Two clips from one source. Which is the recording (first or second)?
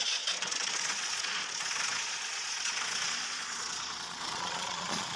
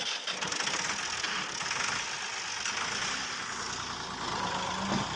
second